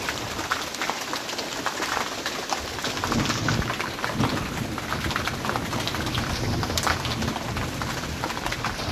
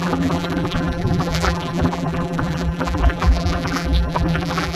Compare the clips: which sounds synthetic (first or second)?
second